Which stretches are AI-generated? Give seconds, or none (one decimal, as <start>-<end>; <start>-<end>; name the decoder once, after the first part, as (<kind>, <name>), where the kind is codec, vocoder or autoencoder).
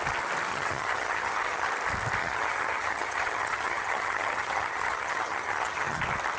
0.5-1.7 (vocoder, HiFi-GAN); 2.2-6.0